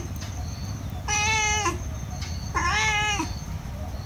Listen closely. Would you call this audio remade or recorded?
recorded